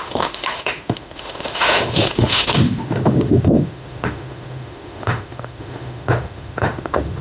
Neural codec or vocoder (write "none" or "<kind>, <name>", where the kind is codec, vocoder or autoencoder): autoencoder, DAC-VAE